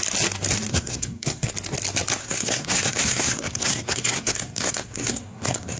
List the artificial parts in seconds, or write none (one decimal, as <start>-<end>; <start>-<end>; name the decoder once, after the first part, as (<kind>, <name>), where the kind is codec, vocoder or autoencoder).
0.7-1.5 (codec, SNAC); 2.2-5.8